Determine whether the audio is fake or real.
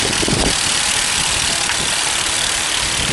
real